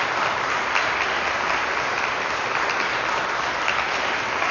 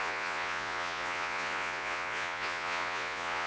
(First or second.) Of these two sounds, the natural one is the first